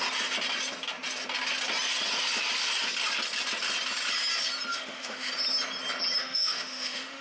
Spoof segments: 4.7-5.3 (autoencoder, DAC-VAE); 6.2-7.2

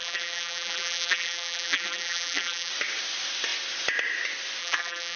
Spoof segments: 0.0-2.7 (vocoder, BigVGAN v2); 4.6-5.2

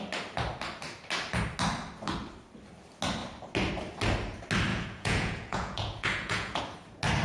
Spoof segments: 4.7-6.6 (vocoder, Vocos)

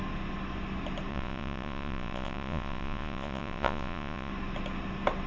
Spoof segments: 1.1-4.3 (vocoder, Vocos)